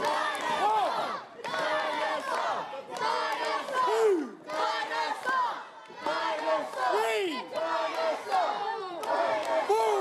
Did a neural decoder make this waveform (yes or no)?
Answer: no